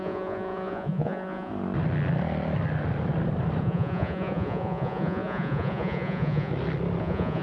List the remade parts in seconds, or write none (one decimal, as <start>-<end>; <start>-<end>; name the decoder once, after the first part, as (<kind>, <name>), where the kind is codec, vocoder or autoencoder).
0.0-1.5 (vocoder, Vocos); 3.6-6.5; 7.0-7.4